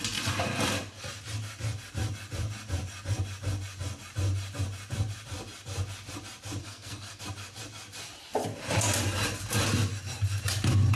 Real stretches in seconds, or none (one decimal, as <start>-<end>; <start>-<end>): 0.0-6.6; 7.2-11.0